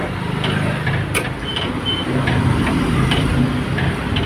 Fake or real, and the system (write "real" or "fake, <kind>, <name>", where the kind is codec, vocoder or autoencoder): fake, vocoder, BigVGAN v2